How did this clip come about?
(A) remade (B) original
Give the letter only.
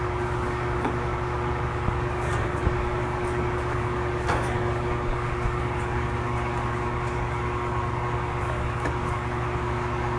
A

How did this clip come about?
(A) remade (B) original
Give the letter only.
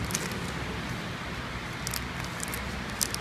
B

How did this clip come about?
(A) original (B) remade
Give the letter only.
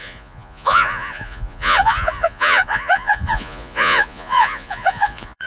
B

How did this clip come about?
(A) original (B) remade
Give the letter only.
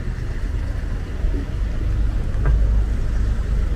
A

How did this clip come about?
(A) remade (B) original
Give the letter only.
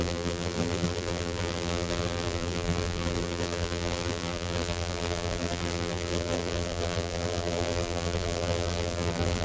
A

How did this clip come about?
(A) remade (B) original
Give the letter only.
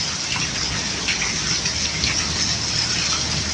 B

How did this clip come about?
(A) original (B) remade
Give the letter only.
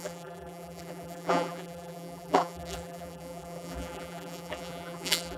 B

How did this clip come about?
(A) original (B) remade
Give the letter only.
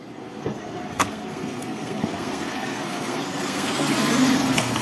B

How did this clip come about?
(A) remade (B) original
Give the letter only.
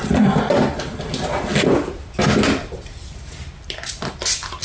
B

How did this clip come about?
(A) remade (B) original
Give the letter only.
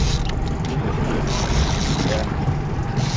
B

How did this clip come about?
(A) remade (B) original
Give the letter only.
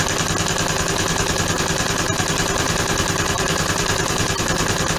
B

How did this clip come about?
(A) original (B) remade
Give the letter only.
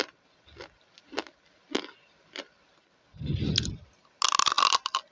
A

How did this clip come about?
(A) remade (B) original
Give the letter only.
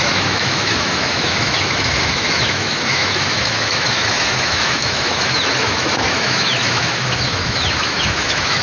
A